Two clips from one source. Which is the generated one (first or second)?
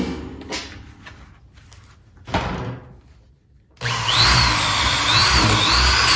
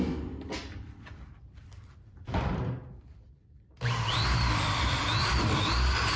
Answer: second